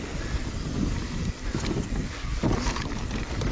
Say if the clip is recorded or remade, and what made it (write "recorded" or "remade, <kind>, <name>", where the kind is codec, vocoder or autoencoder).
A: recorded